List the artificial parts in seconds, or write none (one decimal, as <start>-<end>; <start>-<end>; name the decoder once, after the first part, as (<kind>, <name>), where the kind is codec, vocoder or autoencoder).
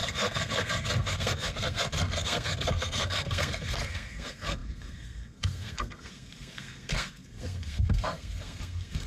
0.0-9.1 (codec, SNAC)